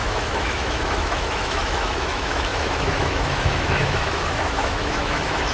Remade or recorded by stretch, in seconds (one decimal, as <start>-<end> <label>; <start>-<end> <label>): 0.0-5.5 remade